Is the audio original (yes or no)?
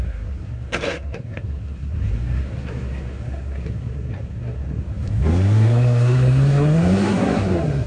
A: no